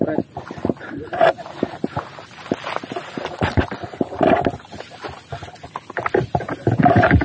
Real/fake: real